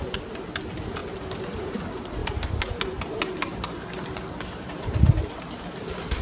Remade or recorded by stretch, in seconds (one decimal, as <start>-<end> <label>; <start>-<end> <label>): 0.0-6.2 recorded